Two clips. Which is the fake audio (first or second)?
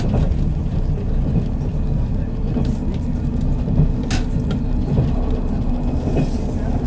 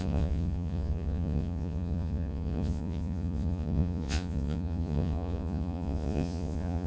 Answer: second